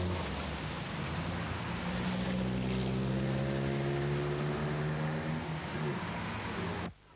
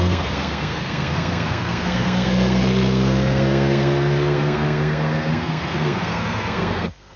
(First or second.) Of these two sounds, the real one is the first